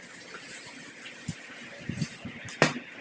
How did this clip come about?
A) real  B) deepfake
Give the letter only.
A